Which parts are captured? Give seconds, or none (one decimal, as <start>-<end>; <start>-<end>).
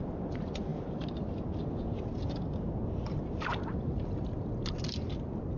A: 0.0-5.6